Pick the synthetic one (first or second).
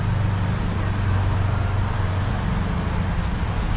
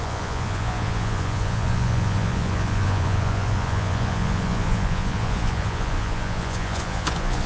second